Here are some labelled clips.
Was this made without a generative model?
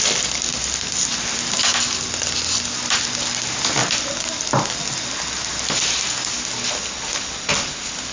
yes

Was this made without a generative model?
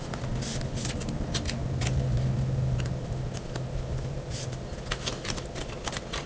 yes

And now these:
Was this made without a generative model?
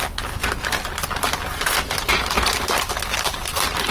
yes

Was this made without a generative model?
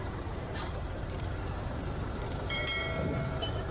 no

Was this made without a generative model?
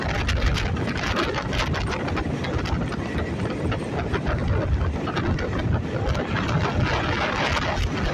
yes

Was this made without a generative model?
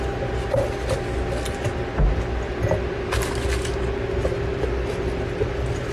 yes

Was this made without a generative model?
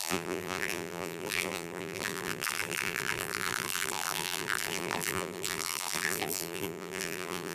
no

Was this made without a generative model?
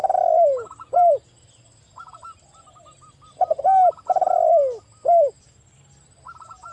yes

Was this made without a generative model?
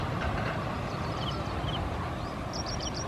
no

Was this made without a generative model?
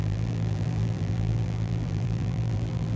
no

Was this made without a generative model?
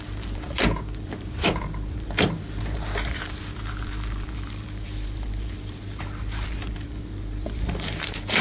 no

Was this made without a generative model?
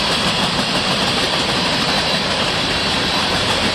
no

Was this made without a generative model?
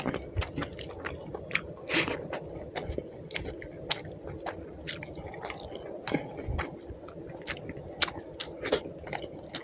yes